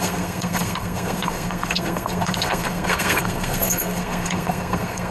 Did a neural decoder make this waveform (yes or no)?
yes